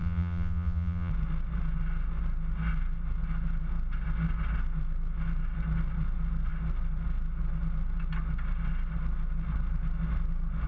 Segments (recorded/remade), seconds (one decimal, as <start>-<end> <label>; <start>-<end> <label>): 0.0-1.1 remade; 1.1-10.7 recorded